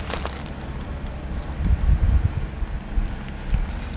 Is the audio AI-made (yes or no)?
no